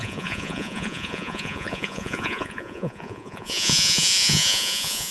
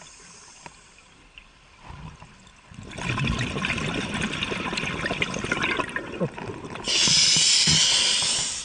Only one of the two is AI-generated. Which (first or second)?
first